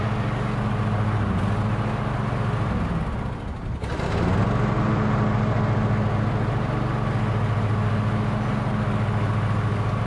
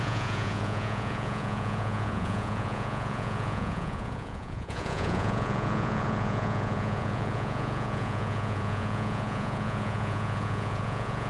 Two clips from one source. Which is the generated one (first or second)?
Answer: second